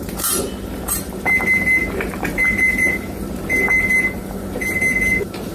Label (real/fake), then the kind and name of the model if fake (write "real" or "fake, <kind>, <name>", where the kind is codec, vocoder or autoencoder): fake, vocoder, BigVGAN v2